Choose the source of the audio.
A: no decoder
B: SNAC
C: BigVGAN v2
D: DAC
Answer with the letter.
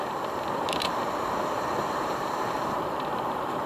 C